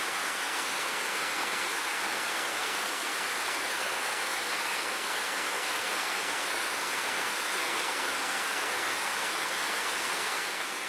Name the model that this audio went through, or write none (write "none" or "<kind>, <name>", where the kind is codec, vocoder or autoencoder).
codec, SNAC